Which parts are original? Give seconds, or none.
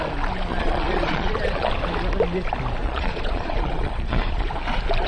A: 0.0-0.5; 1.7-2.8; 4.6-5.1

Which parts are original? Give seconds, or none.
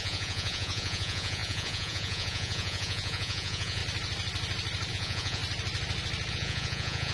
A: 3.8-4.9; 5.4-6.3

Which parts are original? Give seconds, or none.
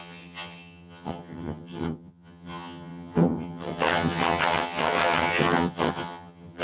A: none